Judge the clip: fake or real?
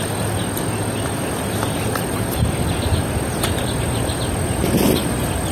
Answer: real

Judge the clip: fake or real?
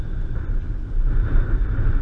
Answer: real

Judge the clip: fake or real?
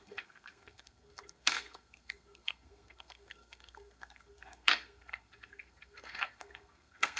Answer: fake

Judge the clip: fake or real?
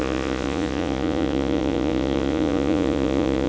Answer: fake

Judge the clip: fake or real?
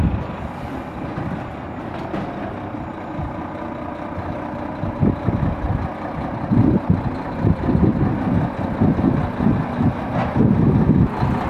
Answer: real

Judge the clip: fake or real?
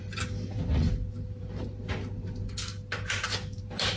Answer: real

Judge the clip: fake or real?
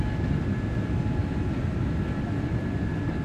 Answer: real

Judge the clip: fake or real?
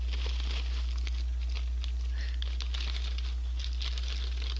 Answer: real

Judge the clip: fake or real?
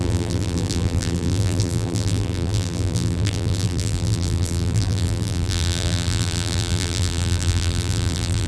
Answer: fake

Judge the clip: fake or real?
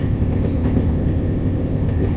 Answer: fake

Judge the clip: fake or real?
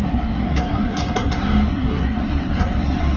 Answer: fake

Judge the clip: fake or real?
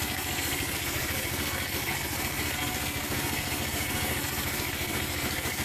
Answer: fake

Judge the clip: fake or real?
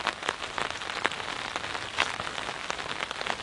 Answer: real